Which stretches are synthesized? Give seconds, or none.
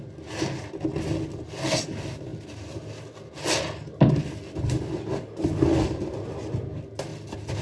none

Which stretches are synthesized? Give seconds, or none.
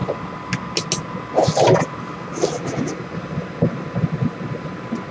none